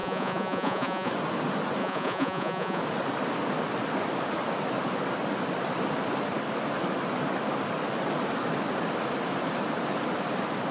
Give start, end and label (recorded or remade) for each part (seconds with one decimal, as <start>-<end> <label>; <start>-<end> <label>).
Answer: 0.0-1.1 remade; 1.1-1.8 recorded; 1.8-2.8 remade; 2.8-10.7 recorded

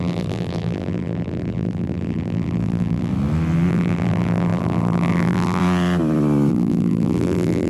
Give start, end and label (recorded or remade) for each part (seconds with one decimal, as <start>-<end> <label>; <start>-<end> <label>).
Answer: 0.0-3.1 remade; 3.1-3.7 recorded; 3.7-5.6 remade; 5.6-6.5 recorded; 6.5-7.7 remade

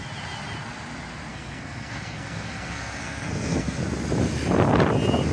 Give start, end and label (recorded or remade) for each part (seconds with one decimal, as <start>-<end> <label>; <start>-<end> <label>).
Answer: 0.0-1.3 recorded; 1.3-3.8 remade; 3.8-5.3 recorded

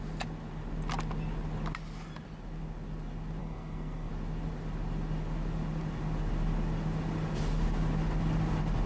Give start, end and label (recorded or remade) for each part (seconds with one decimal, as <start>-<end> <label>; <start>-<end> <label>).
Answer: 0.0-3.4 recorded; 3.4-4.1 remade; 4.1-8.9 recorded

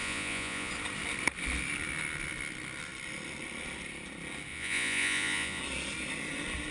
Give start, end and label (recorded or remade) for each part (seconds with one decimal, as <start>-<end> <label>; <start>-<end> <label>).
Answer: 0.0-0.7 remade; 0.7-4.5 recorded; 4.5-5.6 remade; 5.6-6.7 recorded

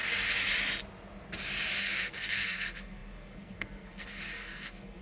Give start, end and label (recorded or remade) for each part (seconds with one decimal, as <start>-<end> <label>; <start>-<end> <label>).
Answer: 0.0-1.8 recorded; 1.8-5.0 remade

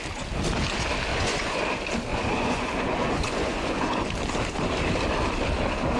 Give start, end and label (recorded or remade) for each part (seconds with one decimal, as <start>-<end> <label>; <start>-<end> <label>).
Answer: 0.0-1.1 recorded; 1.1-1.6 remade; 1.6-2.1 recorded; 2.1-4.1 remade; 4.1-6.0 recorded